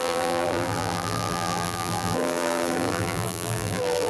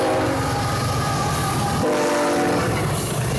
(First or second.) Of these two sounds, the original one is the second